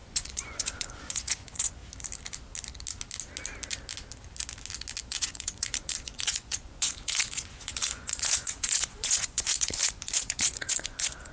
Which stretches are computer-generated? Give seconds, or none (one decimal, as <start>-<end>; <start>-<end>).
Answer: 0.0-1.8; 5.0-11.3